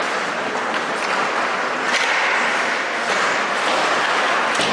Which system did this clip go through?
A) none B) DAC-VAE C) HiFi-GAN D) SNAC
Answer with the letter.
A